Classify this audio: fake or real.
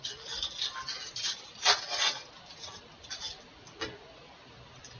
real